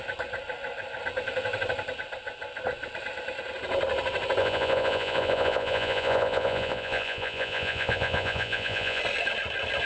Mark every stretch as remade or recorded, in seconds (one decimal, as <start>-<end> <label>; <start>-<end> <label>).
0.0-4.4 recorded; 4.4-9.0 remade; 9.0-9.9 recorded

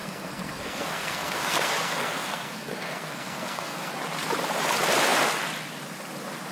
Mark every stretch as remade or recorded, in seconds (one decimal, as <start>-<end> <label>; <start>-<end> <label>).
0.0-3.9 remade; 3.9-6.5 recorded